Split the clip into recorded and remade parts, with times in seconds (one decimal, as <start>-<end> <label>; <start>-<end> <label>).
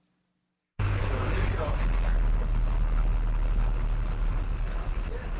0.0-0.6 recorded; 0.6-1.1 remade; 1.1-5.4 recorded